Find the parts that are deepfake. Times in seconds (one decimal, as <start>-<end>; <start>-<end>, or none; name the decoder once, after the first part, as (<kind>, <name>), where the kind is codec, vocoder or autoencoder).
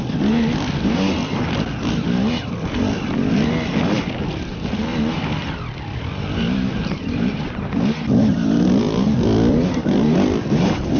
none